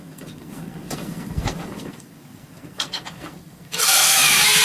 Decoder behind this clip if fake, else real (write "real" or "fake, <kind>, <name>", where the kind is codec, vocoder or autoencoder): fake, codec, SNAC